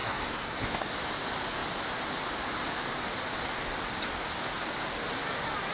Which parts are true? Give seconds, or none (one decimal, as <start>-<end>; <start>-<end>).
0.9-5.7